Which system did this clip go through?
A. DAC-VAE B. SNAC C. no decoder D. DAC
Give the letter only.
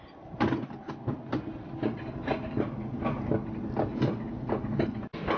C